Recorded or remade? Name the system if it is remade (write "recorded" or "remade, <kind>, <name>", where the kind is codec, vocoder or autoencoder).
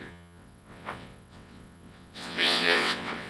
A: remade, vocoder, WaveNeXt